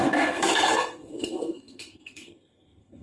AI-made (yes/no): yes